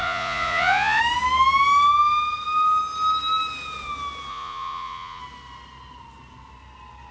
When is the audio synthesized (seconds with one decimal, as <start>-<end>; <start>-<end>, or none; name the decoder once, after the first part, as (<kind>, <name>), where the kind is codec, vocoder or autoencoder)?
0.0-1.0 (vocoder, Vocos); 4.3-5.2